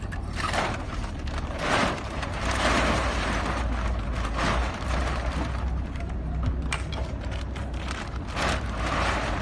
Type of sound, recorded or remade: remade